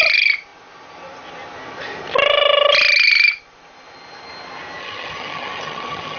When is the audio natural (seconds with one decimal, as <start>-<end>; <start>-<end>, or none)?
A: 0.0-4.8